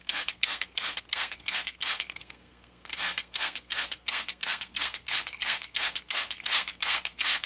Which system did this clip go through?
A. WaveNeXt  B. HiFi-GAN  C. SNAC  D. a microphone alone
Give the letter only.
C